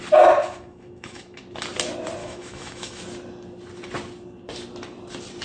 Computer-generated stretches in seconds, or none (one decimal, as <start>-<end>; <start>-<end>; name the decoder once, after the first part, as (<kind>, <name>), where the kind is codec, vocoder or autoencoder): 0.4-1.4 (autoencoder, DAC-VAE); 2.2-3.0